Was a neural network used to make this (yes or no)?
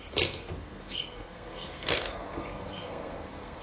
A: yes